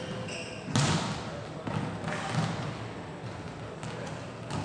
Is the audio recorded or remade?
recorded